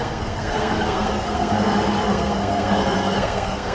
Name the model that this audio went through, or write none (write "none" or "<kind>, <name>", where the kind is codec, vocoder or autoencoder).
codec, SNAC